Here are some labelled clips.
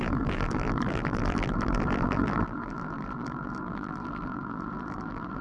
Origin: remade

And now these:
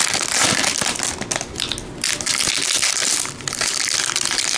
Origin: recorded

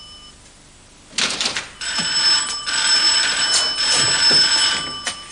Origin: recorded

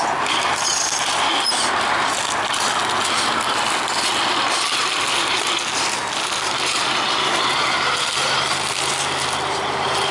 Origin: recorded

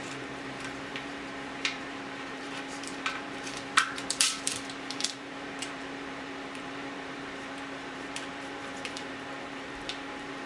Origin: remade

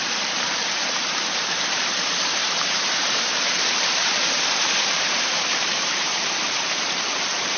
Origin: remade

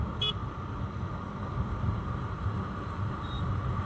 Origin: remade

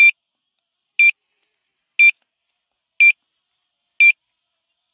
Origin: recorded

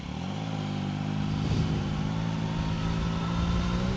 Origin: recorded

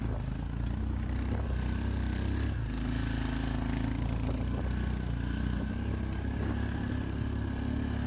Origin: recorded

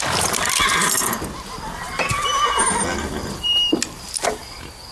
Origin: recorded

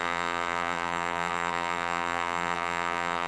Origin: remade